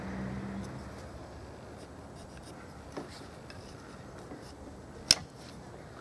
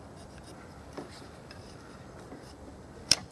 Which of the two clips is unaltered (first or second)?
first